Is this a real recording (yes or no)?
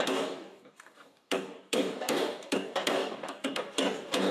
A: no